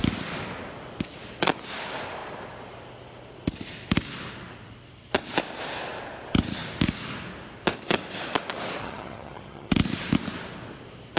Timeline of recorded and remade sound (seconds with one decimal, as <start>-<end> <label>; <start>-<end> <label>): 0.0-8.8 recorded; 8.8-9.7 remade; 9.7-11.2 recorded